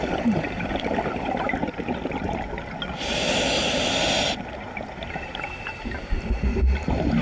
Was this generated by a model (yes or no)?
no